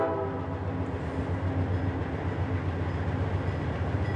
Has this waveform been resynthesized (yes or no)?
no